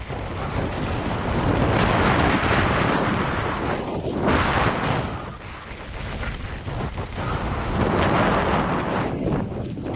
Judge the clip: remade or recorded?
recorded